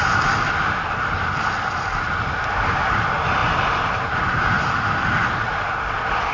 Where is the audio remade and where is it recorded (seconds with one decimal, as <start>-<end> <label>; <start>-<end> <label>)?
0.0-6.3 recorded